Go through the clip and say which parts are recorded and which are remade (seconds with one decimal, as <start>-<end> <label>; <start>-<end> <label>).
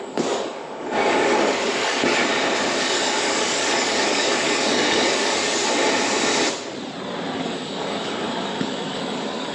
0.0-2.2 remade; 2.2-2.8 recorded; 2.8-5.6 remade; 5.6-7.4 recorded; 7.4-9.5 remade